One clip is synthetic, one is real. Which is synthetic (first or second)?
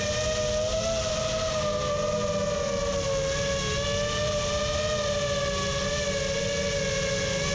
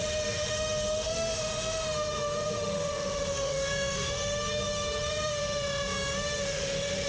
second